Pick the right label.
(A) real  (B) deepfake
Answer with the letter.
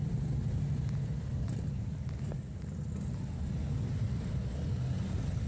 A